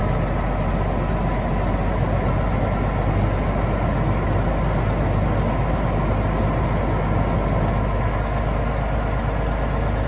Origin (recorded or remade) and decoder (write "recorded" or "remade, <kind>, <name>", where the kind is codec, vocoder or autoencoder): recorded